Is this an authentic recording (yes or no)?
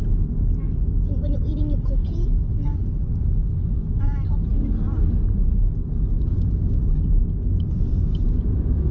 yes